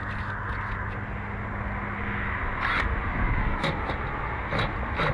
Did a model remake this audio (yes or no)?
no